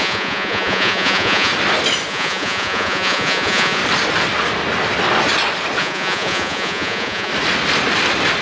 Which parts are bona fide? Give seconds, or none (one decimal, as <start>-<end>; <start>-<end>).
1.5-2.1; 3.8-5.8; 7.3-8.4